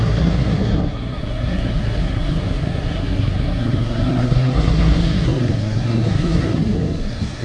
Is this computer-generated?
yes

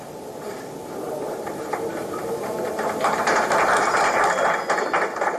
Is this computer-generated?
no